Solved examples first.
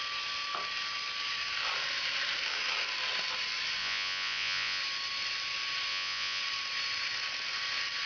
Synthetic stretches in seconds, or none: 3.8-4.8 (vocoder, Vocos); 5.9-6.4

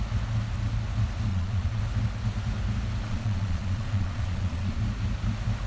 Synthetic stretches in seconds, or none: 1.3-1.8 (vocoder, Vocos); 3.1-4.8